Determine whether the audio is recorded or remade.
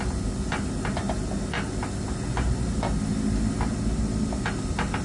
recorded